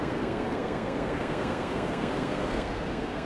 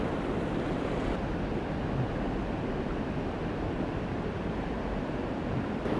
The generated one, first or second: first